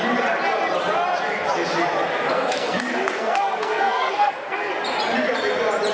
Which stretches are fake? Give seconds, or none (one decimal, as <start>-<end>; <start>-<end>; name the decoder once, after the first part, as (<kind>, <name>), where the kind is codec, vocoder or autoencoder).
2.3-4.7 (codec, SNAC)